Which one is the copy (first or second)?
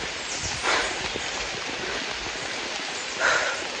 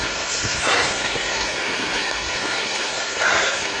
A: second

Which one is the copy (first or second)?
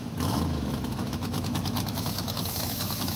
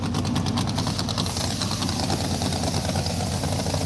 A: first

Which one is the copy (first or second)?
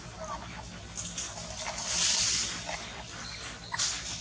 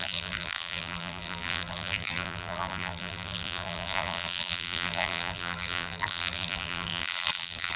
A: second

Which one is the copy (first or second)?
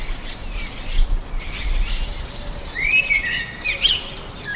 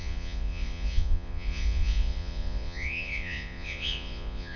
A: second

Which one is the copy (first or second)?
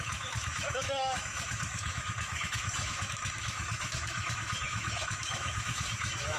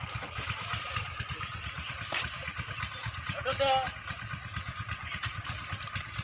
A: first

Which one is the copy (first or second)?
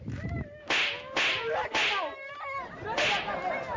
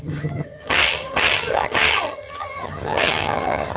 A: second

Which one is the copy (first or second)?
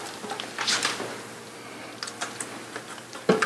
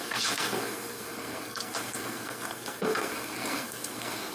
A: second